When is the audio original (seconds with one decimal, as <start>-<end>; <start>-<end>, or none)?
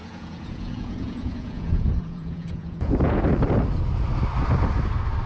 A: 3.2-5.3